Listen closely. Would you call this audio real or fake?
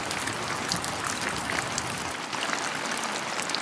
real